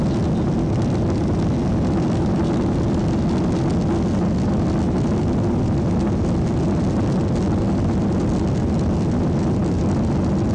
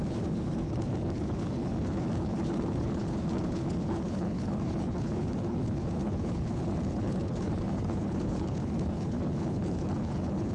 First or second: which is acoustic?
first